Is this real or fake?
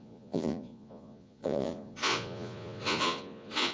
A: fake